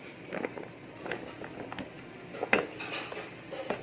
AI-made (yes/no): no